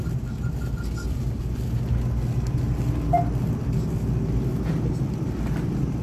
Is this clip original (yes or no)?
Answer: yes